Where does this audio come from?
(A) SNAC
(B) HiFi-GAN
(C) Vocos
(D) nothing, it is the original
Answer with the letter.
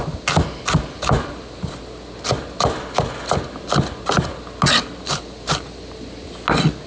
D